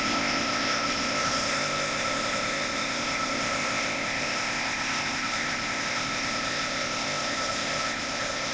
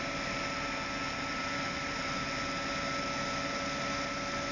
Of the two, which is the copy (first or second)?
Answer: first